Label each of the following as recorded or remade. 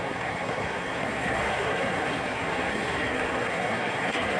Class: remade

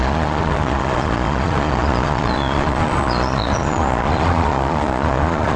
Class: remade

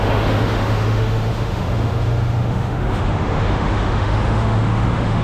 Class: remade